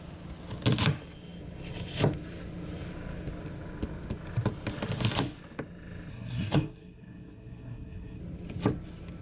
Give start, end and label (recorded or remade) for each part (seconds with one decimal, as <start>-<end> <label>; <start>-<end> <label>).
0.0-6.1 recorded; 6.1-8.2 remade; 8.2-9.2 recorded

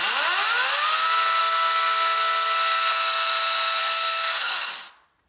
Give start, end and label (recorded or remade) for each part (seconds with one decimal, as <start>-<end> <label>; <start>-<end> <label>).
0.0-1.4 recorded; 1.4-2.9 remade; 2.9-3.8 recorded; 3.8-4.7 remade; 4.7-5.3 recorded

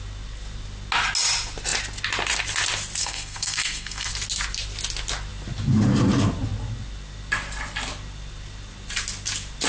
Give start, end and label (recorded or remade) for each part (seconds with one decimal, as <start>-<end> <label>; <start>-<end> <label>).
0.0-3.0 recorded; 3.0-4.1 remade; 4.1-9.7 recorded

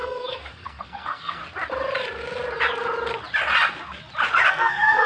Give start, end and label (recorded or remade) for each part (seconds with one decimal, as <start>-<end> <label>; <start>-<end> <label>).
0.0-1.4 remade; 1.4-4.5 recorded; 4.5-5.1 remade

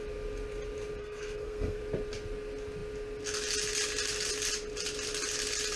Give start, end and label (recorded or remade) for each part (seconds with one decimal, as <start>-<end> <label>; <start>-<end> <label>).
0.0-1.0 recorded; 1.0-1.8 remade; 1.8-5.8 recorded

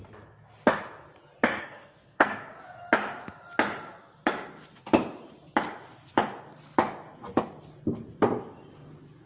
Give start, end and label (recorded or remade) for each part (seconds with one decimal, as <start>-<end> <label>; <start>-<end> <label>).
0.0-1.6 recorded; 1.6-2.5 remade; 2.5-9.3 recorded

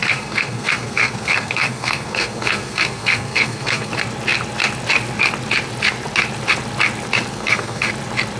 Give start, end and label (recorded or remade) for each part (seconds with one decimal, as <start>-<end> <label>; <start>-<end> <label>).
0.0-3.9 remade; 3.9-7.3 recorded; 7.3-7.9 remade; 7.9-8.4 recorded

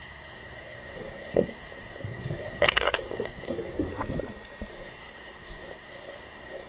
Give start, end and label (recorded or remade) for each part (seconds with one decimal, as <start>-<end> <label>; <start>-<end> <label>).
0.0-3.9 remade; 3.9-4.7 recorded; 4.7-6.7 remade